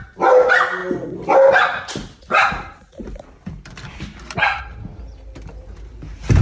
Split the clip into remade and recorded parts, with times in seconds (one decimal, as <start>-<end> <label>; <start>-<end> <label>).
0.0-6.4 recorded